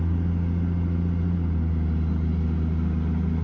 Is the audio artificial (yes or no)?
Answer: no